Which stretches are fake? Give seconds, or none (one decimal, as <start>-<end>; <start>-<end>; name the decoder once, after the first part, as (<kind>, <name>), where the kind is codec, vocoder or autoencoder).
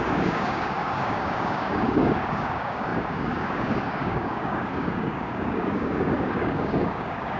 0.0-7.4 (codec, DAC)